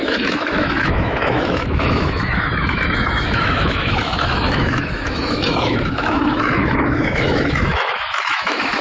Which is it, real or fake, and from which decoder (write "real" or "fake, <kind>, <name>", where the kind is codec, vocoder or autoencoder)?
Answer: fake, autoencoder, DAC-VAE